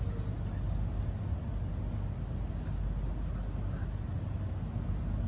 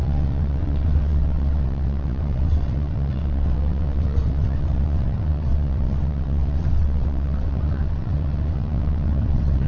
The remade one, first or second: second